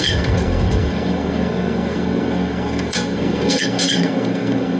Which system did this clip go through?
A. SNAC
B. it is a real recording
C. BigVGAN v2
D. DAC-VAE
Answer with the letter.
A